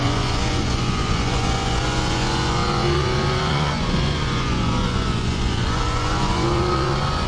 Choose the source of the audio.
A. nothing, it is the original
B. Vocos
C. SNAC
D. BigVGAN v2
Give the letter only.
B